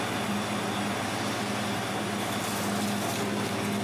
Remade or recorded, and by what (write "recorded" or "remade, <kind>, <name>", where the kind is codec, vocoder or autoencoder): recorded